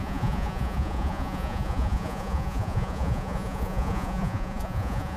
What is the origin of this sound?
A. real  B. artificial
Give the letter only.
B